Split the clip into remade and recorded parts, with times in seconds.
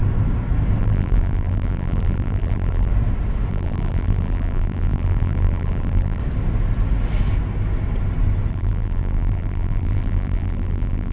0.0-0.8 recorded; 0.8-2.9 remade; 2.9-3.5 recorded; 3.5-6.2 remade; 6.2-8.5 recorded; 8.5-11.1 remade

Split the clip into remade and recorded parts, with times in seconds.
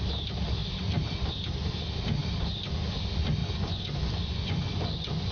0.0-3.4 recorded; 3.4-5.3 remade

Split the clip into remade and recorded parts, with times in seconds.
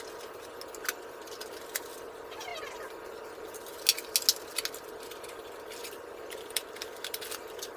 0.0-7.8 recorded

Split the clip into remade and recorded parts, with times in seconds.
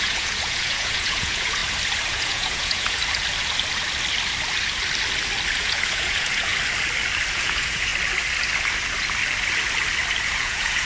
0.0-1.6 remade; 1.6-2.1 recorded; 2.1-3.0 remade; 3.0-5.5 recorded; 5.5-6.5 remade; 6.5-7.3 recorded; 7.3-7.9 remade; 7.9-10.2 recorded; 10.2-10.9 remade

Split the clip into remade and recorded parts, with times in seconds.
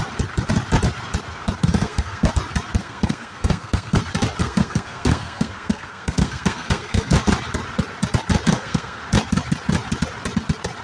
0.0-1.6 recorded; 1.6-2.3 remade; 2.3-2.8 recorded; 2.8-4.0 remade; 4.0-4.4 recorded; 4.4-7.1 remade; 7.1-8.5 recorded; 8.5-9.0 remade; 9.0-10.8 recorded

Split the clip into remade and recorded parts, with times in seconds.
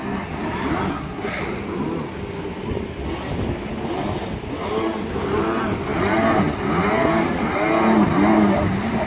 0.0-0.9 recorded; 0.9-1.4 remade; 1.4-9.1 recorded